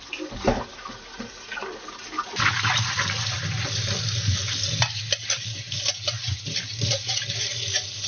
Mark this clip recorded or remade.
recorded